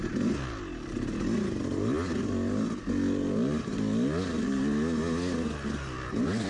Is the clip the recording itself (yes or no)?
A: yes